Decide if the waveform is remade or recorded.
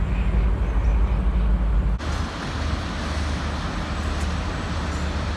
recorded